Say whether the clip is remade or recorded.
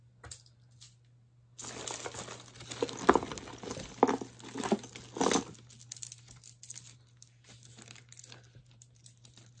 recorded